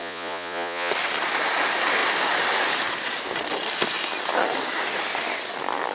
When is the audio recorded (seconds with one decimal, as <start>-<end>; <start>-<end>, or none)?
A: 0.9-5.9